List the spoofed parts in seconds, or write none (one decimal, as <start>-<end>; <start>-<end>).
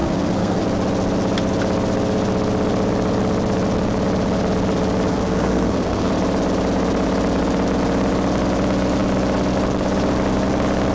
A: 0.0-0.6; 5.1-6.1